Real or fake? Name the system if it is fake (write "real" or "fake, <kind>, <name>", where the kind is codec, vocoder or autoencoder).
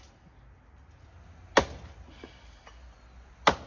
real